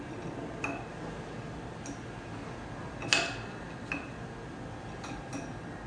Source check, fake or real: real